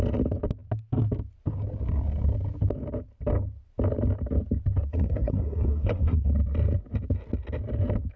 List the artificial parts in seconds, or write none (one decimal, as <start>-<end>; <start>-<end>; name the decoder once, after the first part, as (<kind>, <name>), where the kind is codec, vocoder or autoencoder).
4.9-6.3 (codec, SNAC)